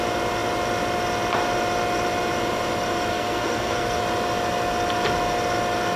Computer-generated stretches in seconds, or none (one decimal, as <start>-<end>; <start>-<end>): 3.1-4.0